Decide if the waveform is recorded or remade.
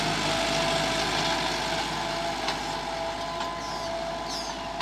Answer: recorded